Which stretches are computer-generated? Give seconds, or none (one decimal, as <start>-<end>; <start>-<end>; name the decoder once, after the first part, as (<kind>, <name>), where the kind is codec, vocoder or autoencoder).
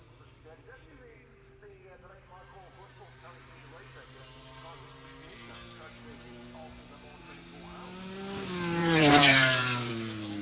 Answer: 8.8-9.9 (vocoder, BigVGAN v2)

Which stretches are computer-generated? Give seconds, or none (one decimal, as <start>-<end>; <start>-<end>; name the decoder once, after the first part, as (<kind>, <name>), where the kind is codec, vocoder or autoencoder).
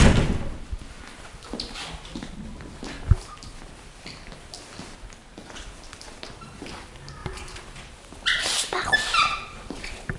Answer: 5.3-6.3 (vocoder, BigVGAN v2); 7.2-10.2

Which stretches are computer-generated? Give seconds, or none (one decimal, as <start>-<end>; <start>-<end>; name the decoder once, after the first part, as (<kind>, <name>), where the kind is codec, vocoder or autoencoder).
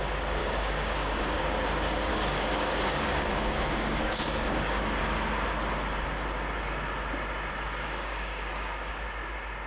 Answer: 0.4-1.4 (codec, DAC); 2.1-5.0; 7.8-8.9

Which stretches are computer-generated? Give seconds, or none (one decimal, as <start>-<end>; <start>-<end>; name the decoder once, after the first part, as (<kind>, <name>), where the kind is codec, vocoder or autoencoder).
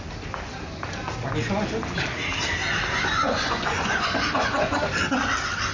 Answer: 3.2-4.8 (vocoder, Vocos)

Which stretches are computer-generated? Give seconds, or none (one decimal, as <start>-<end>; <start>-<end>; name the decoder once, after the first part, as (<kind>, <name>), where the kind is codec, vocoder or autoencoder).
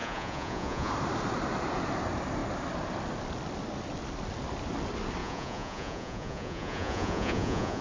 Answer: 0.0-0.9 (vocoder, Vocos); 5.2-7.8